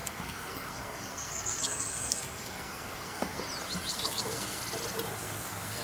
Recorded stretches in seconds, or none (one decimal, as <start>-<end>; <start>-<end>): 3.4-3.9; 4.6-5.2